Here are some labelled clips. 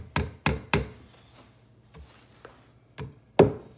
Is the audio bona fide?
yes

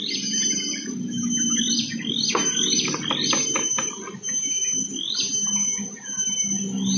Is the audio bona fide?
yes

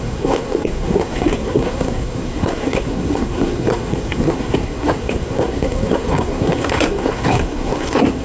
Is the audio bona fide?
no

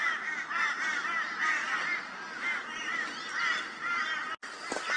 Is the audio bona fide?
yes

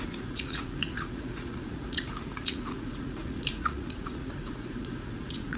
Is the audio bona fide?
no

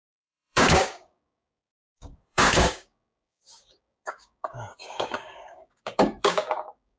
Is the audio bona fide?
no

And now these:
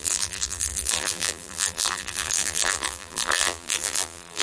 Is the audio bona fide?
no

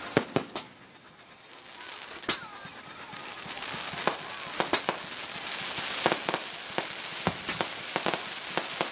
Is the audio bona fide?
yes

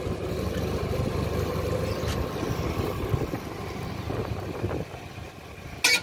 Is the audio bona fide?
yes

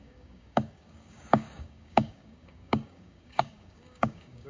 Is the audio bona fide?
no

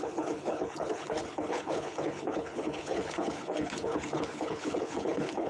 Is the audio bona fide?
no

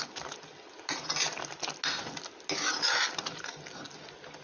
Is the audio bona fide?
yes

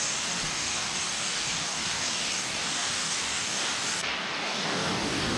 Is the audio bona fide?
no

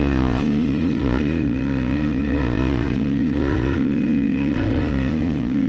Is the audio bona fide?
no